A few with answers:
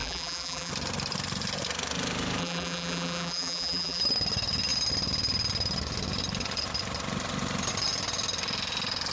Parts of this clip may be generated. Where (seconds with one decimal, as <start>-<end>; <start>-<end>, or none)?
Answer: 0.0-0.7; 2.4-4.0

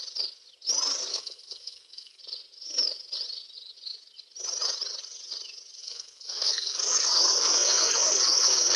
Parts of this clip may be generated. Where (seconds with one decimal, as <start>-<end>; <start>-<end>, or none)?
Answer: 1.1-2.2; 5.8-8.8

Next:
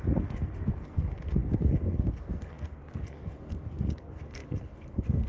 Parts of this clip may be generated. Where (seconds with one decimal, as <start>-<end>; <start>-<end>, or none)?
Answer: 0.0-5.3

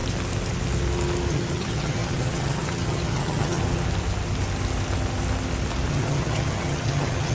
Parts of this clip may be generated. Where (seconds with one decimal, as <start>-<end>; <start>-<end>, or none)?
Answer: 1.3-3.6; 5.9-7.3

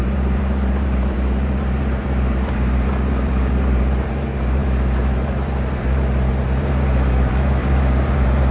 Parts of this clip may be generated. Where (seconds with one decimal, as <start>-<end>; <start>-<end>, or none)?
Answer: 0.0-8.5

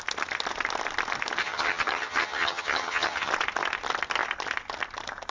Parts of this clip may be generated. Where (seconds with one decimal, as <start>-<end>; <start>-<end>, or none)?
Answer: 1.4-3.3

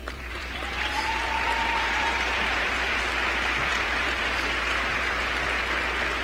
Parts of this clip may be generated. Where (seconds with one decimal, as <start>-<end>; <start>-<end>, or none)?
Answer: 0.0-3.0; 3.7-5.2